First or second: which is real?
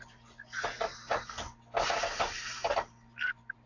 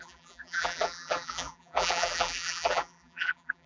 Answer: first